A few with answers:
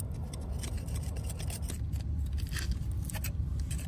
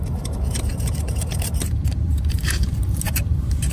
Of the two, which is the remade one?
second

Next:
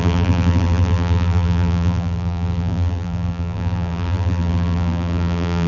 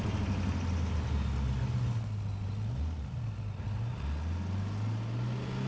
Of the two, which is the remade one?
first